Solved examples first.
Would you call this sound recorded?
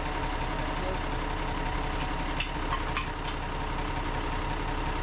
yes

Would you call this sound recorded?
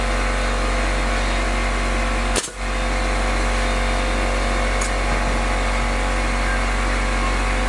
yes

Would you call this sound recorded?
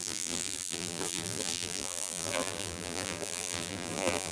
no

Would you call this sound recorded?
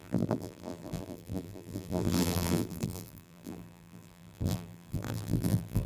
no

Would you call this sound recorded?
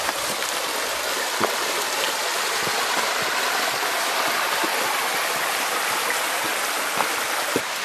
yes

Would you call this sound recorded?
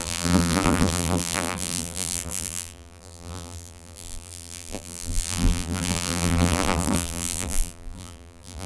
no